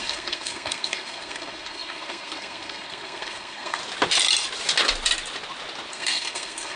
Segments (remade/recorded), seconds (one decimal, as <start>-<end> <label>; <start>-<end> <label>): 0.0-3.8 remade; 3.8-5.9 recorded; 5.9-6.8 remade